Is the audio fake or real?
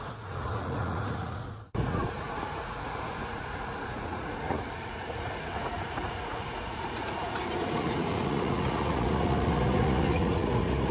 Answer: fake